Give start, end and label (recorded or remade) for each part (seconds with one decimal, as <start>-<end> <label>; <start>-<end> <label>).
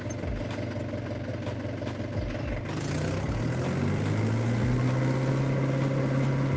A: 0.0-6.6 recorded